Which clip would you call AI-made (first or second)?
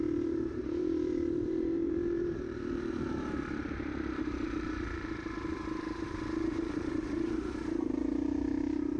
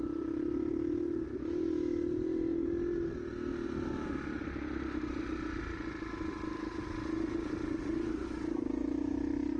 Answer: first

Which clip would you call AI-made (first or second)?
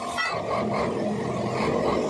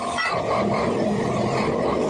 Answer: second